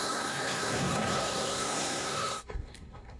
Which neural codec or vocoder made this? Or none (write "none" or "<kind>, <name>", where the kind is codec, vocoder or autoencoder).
codec, SNAC